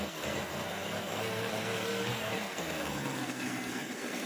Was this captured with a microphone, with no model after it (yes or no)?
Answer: no